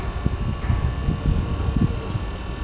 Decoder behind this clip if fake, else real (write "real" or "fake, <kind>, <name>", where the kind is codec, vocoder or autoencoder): real